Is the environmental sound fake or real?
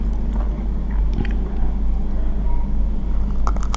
real